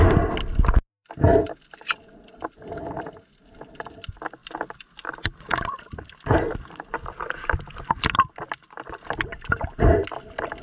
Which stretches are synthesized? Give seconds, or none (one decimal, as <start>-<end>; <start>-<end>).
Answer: none

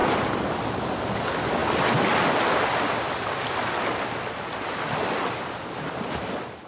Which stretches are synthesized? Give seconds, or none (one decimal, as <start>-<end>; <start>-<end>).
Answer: none

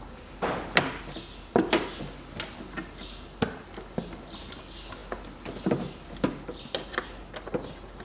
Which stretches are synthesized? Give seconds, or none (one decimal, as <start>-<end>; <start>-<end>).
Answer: none

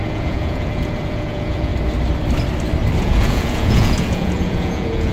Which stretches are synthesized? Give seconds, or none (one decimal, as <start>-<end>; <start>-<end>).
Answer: 0.0-1.7; 3.0-5.1